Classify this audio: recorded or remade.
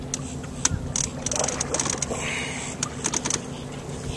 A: recorded